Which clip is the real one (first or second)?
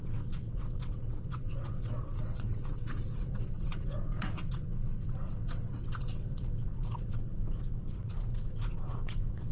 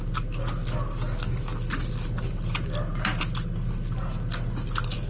second